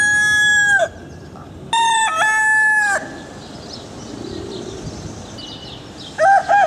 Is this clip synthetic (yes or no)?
no